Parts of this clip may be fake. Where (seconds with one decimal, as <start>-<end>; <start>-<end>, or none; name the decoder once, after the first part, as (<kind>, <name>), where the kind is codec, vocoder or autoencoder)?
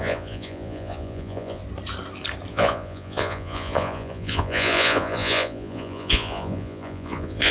0.0-1.6 (vocoder, Vocos); 2.5-7.5